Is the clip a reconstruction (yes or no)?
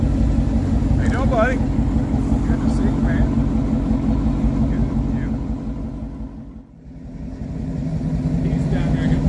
no